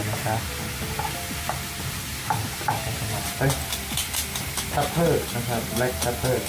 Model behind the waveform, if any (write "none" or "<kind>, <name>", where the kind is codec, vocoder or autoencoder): none